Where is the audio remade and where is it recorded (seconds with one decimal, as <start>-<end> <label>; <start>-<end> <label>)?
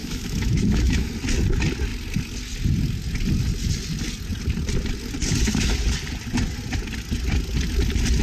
0.0-1.1 remade; 1.1-8.2 recorded